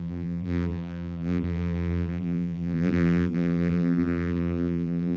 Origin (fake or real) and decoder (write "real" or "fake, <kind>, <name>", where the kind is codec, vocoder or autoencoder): fake, vocoder, BigVGAN v2